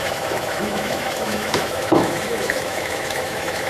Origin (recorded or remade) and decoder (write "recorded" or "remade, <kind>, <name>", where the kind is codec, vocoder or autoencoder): remade, autoencoder, DAC-VAE